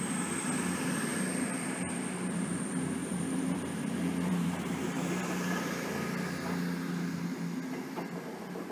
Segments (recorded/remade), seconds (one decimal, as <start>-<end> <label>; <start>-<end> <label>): 0.0-1.1 recorded; 1.1-2.6 remade; 2.6-3.0 recorded; 3.0-5.9 remade; 5.9-8.7 recorded